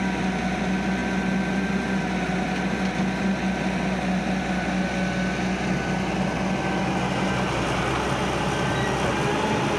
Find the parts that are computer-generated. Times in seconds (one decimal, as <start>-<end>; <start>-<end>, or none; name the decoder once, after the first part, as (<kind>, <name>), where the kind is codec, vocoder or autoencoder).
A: none